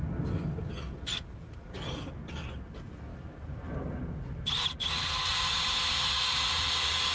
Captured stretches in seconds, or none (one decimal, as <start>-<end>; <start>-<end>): 0.0-3.1; 4.0-7.1